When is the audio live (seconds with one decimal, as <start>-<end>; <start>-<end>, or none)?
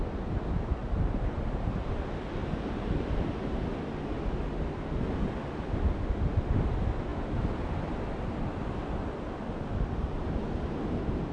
0.0-0.8; 1.9-2.4; 3.3-11.3